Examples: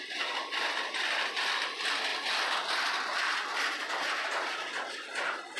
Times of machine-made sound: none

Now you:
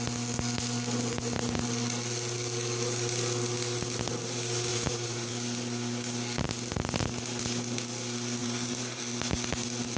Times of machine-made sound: 4.7-5.3 (vocoder, BigVGAN v2); 8.4-9.0

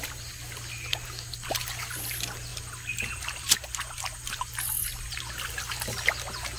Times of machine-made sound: none